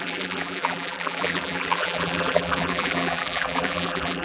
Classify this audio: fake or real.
fake